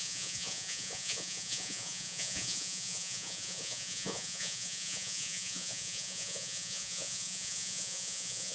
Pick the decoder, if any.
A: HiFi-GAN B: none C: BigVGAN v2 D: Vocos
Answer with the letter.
D